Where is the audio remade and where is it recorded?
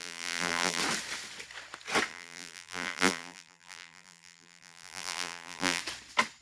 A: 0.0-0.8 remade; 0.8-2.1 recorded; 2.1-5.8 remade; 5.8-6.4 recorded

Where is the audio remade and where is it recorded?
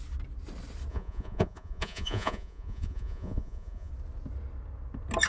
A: 0.0-0.9 recorded; 0.9-3.9 remade; 3.9-5.3 recorded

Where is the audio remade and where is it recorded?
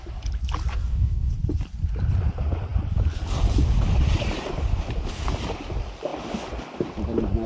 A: 0.0-0.7 recorded; 0.7-1.3 remade; 1.3-7.5 recorded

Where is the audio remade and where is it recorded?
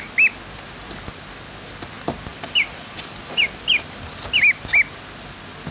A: 0.0-2.3 recorded; 2.3-3.2 remade; 3.2-5.7 recorded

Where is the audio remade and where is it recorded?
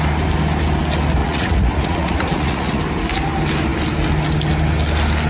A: 0.0-1.2 recorded; 1.2-2.8 remade; 2.8-5.3 recorded